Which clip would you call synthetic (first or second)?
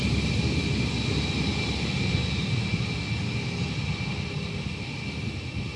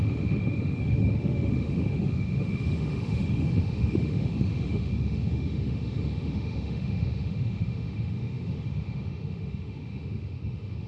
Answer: second